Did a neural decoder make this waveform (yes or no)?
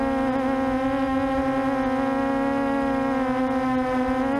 no